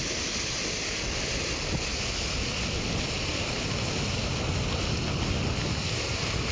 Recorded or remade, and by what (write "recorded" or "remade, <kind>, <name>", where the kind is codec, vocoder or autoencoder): recorded